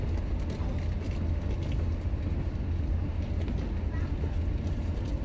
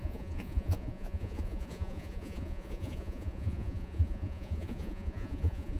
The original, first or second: first